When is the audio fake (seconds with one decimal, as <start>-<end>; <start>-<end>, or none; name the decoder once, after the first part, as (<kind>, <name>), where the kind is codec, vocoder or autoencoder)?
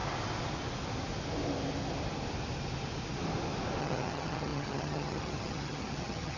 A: 3.8-6.4 (vocoder, HiFi-GAN)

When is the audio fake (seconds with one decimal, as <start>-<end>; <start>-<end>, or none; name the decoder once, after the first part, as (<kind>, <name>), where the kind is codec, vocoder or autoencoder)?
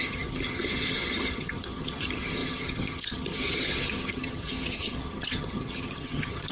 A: 0.0-6.5 (vocoder, HiFi-GAN)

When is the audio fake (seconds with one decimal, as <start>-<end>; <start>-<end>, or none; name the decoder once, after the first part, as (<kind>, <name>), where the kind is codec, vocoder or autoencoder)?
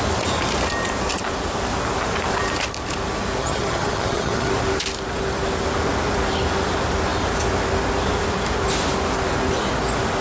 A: 3.4-4.5 (vocoder, HiFi-GAN)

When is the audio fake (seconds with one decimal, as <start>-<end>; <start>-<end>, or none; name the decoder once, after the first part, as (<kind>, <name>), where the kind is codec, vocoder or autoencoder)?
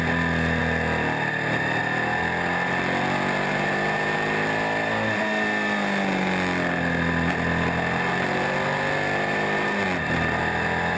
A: none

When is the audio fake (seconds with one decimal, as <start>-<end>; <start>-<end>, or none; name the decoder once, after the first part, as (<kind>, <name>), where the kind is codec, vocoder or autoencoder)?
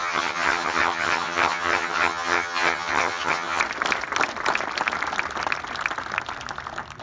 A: 0.0-3.6 (vocoder, HiFi-GAN)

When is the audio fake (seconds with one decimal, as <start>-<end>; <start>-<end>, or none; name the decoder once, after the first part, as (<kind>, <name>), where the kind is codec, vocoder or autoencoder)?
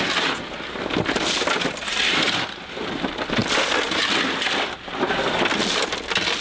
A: none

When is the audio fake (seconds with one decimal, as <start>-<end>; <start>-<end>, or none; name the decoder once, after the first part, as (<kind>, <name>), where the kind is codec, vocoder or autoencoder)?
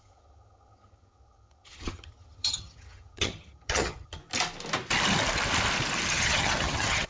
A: 0.0-4.2 (vocoder, HiFi-GAN); 6.1-7.1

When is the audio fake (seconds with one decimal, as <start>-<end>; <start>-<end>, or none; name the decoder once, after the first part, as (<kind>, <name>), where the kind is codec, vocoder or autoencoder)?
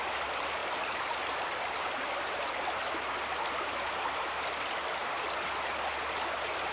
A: none